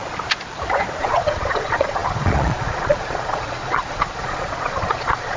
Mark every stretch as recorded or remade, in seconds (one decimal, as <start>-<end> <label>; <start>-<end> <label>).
0.0-1.0 recorded; 1.0-5.4 remade